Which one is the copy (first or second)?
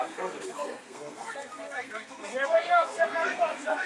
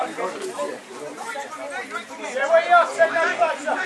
first